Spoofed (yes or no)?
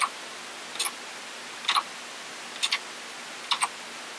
no